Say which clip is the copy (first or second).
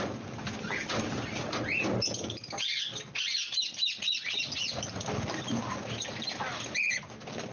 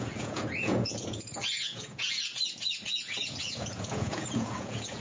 second